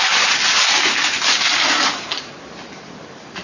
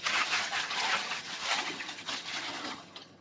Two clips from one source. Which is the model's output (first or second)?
second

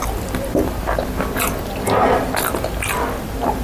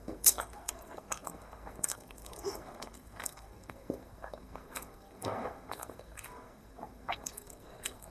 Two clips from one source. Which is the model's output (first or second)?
second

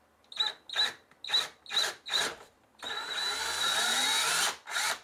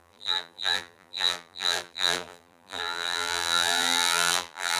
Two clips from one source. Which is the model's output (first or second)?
second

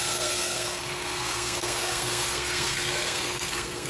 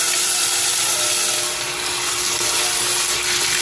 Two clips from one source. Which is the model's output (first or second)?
first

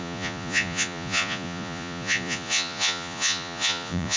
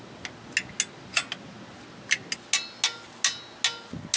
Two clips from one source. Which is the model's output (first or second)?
first